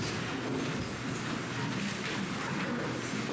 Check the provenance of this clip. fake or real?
real